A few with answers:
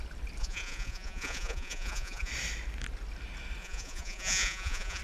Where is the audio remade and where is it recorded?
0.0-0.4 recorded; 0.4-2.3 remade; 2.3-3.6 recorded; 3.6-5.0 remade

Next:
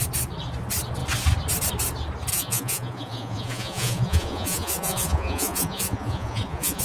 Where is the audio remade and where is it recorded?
0.0-2.3 recorded; 2.3-6.8 remade

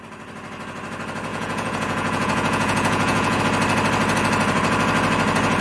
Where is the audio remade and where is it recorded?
0.0-1.3 recorded; 1.3-3.4 remade; 3.4-5.6 recorded

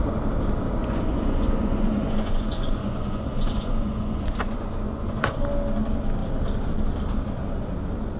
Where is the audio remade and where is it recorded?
0.0-0.8 recorded; 0.8-5.4 remade; 5.4-8.2 recorded

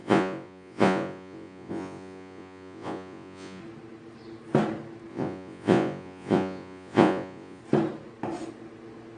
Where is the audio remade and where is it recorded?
0.0-3.6 remade; 3.6-5.1 recorded; 5.1-7.6 remade; 7.6-9.2 recorded

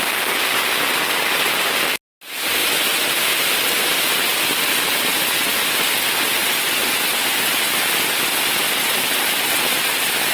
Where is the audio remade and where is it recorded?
0.0-10.3 recorded

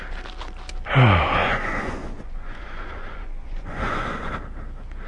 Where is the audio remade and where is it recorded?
0.0-1.4 recorded; 1.4-4.3 remade; 4.3-5.1 recorded